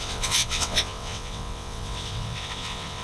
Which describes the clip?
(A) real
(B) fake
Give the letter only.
B